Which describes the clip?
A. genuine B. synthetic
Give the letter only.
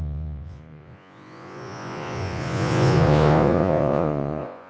B